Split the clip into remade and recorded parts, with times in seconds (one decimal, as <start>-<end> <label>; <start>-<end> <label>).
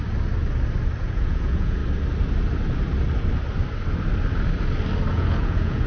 0.0-1.0 recorded; 1.0-1.8 remade; 1.8-5.1 recorded; 5.1-5.9 remade